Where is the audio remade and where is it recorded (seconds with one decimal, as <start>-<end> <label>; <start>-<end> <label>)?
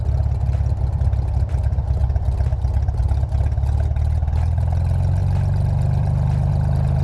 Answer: 0.0-7.0 recorded